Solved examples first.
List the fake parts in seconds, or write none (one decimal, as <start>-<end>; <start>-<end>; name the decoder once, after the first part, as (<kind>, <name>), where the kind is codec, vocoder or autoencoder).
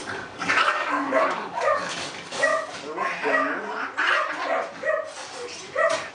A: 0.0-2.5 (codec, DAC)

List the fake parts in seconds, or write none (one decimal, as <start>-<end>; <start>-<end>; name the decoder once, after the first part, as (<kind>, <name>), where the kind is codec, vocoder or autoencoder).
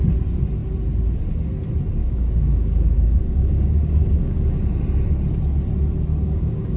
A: 2.0-4.6 (codec, DAC); 6.1-6.8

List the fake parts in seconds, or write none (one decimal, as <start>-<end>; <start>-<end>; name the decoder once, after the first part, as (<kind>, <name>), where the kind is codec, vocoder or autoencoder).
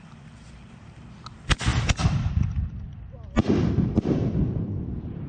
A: none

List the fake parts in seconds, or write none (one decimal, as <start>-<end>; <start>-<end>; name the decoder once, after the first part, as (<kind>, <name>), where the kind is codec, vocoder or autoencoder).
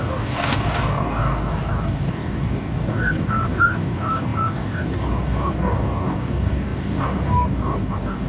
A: 0.0-8.3 (codec, DAC)